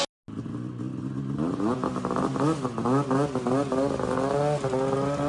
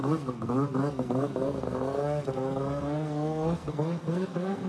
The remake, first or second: second